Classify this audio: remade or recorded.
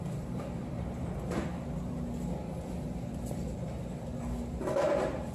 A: remade